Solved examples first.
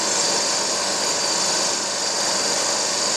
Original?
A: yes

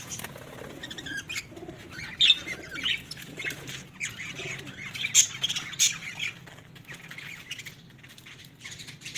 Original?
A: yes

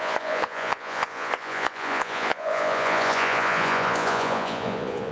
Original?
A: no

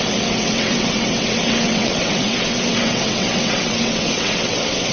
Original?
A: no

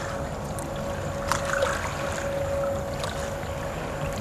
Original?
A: yes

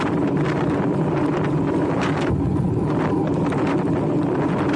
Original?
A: yes